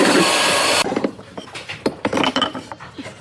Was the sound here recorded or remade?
remade